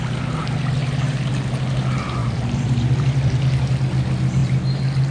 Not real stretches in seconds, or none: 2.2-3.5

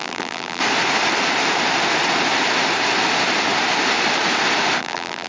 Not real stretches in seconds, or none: 0.0-0.6; 4.8-5.3

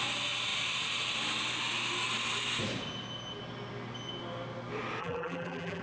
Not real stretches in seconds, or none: 5.0-5.8

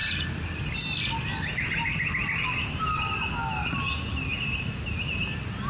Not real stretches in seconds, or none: 4.3-4.9

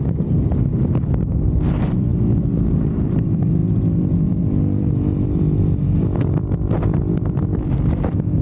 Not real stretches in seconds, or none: 0.0-2.1; 2.7-3.6; 4.1-8.4

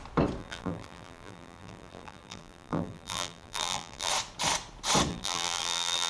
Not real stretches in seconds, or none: 0.4-4.1; 5.1-6.1

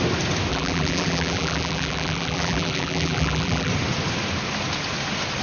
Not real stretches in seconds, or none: 0.5-3.7